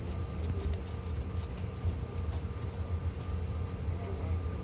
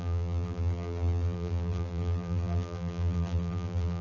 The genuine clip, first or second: first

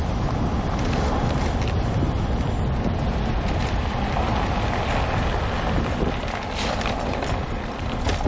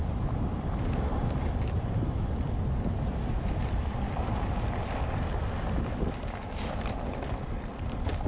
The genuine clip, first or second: first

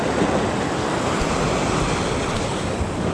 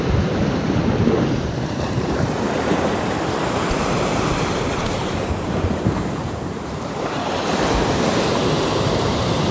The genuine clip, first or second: first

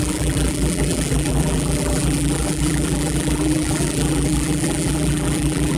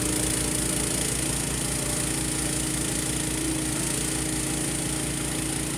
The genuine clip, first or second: second